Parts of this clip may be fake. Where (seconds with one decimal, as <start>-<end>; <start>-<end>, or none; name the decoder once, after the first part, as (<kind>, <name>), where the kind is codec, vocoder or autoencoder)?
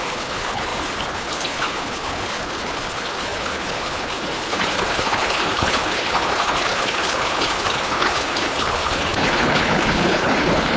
0.0-10.8 (codec, HILCodec)